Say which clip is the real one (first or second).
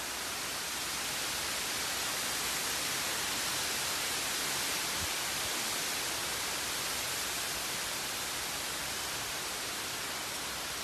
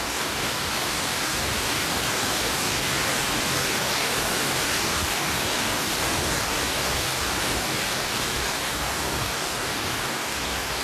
first